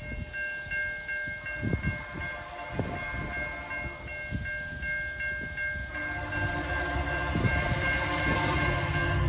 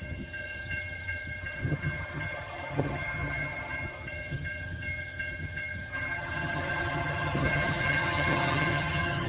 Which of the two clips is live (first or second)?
first